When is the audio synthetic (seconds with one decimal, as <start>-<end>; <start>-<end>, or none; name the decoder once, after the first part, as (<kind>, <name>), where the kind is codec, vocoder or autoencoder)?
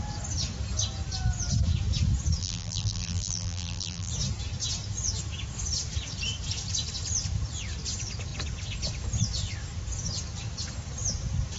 2.4-4.1 (vocoder, BigVGAN v2)